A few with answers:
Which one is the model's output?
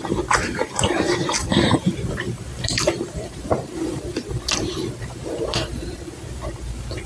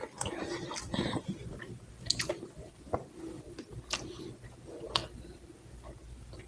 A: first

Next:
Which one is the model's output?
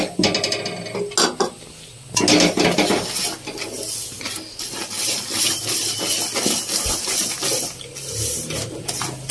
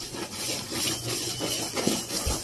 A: second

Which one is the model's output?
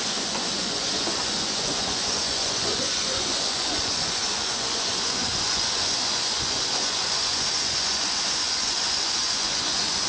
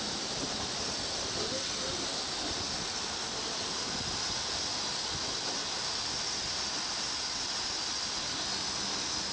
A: first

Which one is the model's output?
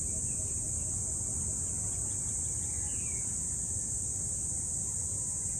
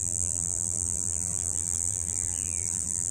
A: second